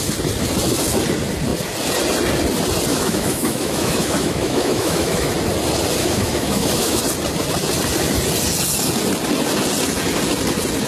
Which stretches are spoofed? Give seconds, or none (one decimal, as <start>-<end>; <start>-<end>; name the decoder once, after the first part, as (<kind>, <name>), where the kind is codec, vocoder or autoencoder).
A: 2.9-5.3 (autoencoder, DAC-VAE); 6.0-7.0